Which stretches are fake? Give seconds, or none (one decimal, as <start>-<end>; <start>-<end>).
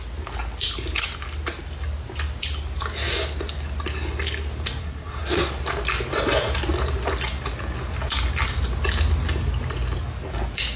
4.8-5.5